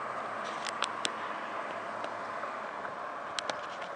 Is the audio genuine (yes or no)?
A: yes